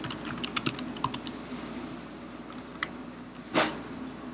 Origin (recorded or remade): recorded